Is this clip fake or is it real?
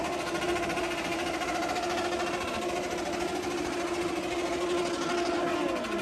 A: real